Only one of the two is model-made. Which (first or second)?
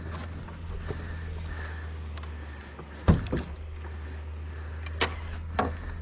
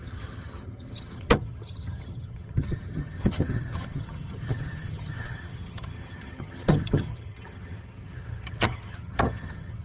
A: second